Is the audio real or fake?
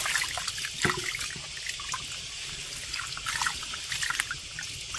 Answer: real